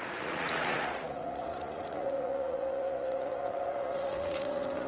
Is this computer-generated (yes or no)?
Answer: yes